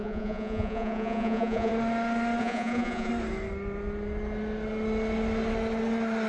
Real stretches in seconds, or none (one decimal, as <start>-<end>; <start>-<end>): 1.7-2.4; 3.1-6.3

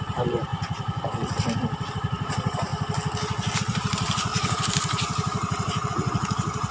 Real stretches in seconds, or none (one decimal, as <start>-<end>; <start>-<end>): 0.5-1.9; 2.7-3.6